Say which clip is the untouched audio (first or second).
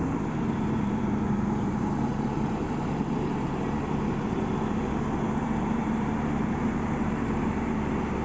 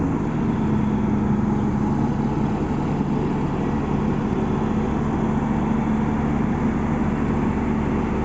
second